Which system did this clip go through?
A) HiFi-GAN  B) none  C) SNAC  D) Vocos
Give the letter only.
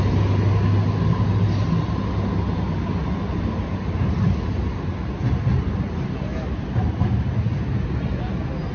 B